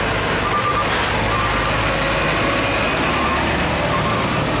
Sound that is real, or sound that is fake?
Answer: real